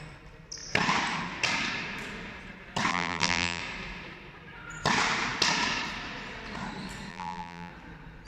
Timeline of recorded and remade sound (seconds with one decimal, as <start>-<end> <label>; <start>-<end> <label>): 0.0-2.9 recorded; 2.9-3.6 remade; 3.6-7.1 recorded; 7.1-7.7 remade; 7.7-8.3 recorded